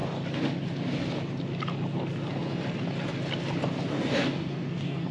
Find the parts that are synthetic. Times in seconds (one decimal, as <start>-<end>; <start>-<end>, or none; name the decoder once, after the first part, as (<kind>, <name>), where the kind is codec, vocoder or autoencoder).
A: 3.9-5.1 (codec, DAC)